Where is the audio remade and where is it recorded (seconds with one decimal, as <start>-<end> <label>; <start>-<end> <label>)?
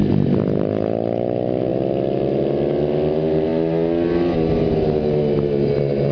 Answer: 0.0-6.1 recorded